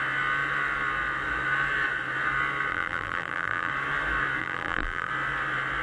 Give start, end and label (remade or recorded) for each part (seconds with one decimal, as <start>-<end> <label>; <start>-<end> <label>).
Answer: 0.0-2.7 recorded; 2.7-3.7 remade; 3.7-4.4 recorded; 4.4-5.1 remade; 5.1-5.8 recorded